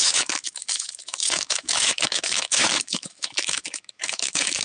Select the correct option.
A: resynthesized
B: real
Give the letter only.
A